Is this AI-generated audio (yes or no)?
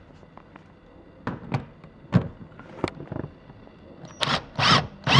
no